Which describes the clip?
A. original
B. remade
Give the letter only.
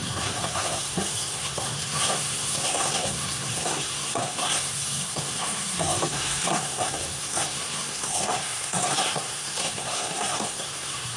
B